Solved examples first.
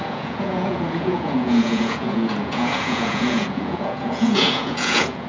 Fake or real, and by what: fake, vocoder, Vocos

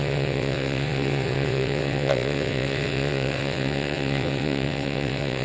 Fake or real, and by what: fake, vocoder, WaveNeXt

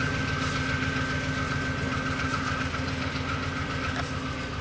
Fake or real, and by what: real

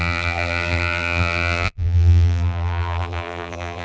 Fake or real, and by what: fake, vocoder, BigVGAN v2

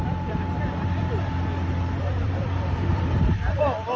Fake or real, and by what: fake, vocoder, BigVGAN v2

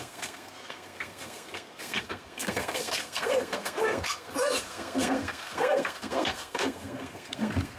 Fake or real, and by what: fake, codec, SNAC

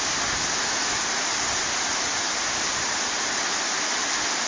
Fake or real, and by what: real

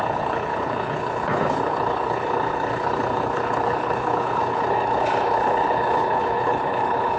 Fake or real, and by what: fake, codec, HILCodec